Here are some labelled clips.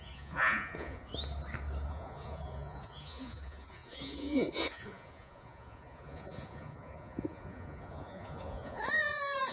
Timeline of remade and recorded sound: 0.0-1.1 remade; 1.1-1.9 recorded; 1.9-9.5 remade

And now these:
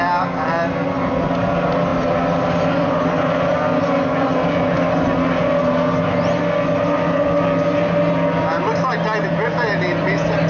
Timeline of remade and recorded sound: 0.0-10.5 recorded

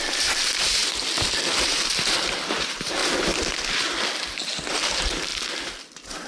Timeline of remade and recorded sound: 0.0-0.8 remade; 0.8-2.3 recorded; 2.3-3.0 remade; 3.0-4.7 recorded; 4.7-5.3 remade; 5.3-6.3 recorded

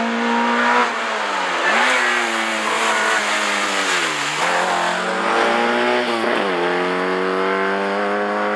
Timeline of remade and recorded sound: 0.0-8.6 recorded

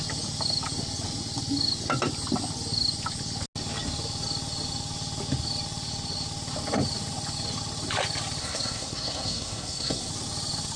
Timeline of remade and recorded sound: 0.0-8.4 recorded; 8.4-10.1 remade; 10.1-10.8 recorded

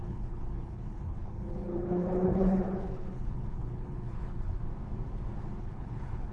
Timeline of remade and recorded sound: 0.0-4.6 remade; 4.6-5.6 recorded; 5.6-6.3 remade

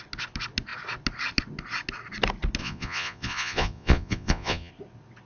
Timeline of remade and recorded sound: 0.0-2.6 recorded; 2.6-4.7 remade; 4.7-5.2 recorded